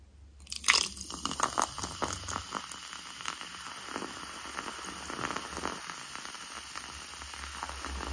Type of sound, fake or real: real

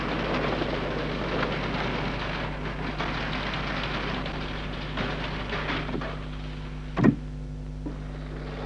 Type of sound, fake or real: real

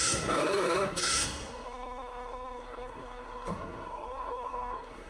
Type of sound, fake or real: fake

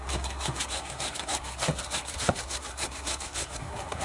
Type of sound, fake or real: fake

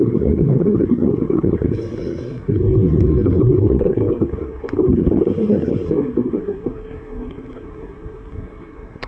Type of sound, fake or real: fake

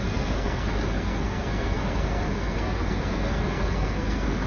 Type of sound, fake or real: fake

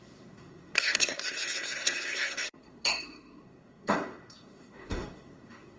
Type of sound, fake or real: fake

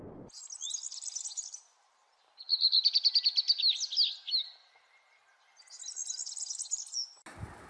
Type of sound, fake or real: real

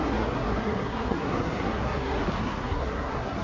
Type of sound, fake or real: fake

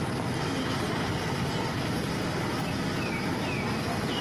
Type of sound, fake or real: real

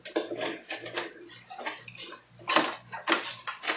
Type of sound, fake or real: real